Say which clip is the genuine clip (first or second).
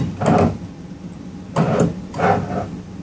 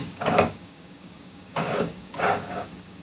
first